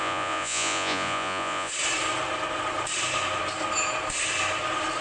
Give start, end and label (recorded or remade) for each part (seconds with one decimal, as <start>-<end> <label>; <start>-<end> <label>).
0.0-1.7 remade; 1.7-5.0 recorded